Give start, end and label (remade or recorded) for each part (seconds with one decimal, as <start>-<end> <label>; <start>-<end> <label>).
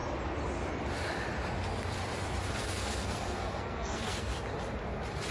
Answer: 0.0-2.6 recorded; 2.6-4.3 remade; 4.3-5.3 recorded